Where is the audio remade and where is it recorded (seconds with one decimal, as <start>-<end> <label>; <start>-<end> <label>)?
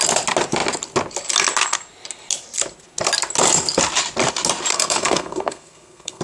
0.0-4.7 recorded; 4.7-6.2 remade